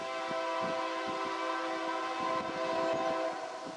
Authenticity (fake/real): real